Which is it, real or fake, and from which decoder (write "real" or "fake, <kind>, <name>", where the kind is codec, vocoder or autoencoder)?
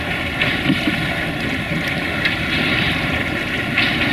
real